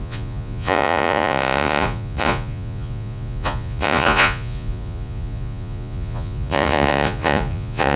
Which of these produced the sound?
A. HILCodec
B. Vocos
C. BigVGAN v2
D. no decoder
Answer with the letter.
B